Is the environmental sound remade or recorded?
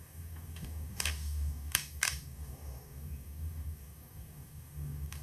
remade